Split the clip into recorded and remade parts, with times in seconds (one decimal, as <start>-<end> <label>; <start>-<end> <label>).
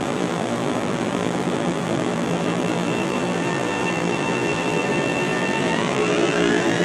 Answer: 0.0-6.8 remade